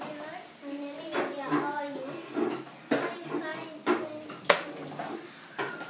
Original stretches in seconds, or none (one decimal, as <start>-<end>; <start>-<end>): 0.0-5.9